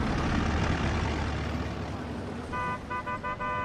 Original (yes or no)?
yes